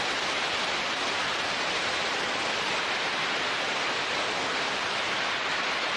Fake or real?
fake